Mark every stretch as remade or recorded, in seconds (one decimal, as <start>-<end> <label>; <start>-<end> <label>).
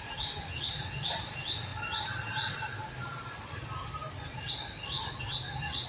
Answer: 0.0-0.5 recorded; 0.5-1.1 remade; 1.1-5.9 recorded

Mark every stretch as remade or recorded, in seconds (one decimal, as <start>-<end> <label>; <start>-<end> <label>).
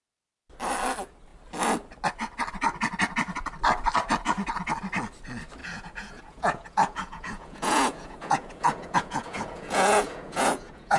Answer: 0.0-5.6 recorded; 5.6-11.0 remade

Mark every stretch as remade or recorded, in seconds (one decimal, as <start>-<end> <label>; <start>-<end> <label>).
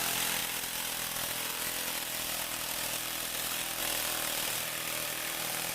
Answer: 0.0-0.4 recorded; 0.4-3.8 remade; 3.8-5.7 recorded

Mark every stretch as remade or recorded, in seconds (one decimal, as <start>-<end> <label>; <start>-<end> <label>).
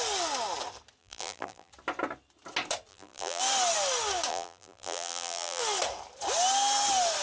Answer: 0.0-1.0 recorded; 1.0-1.7 remade; 1.7-2.9 recorded; 2.9-3.4 remade; 3.4-4.3 recorded; 4.3-5.6 remade; 5.6-7.2 recorded